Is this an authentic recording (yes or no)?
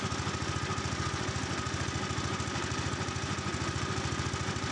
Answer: yes